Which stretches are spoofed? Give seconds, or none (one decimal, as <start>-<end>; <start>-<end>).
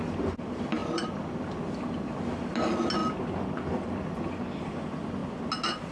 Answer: 0.8-2.1